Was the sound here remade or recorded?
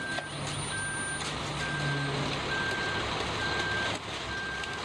recorded